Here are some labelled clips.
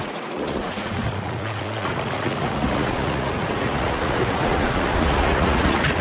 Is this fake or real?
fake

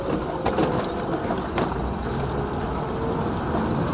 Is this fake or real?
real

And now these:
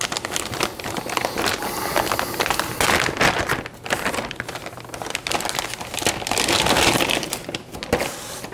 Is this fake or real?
real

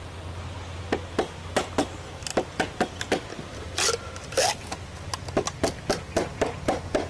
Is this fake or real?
real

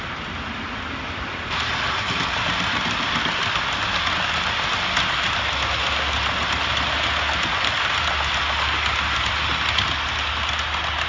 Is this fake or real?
real